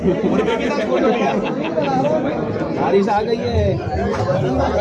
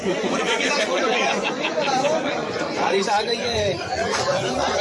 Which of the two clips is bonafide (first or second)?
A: first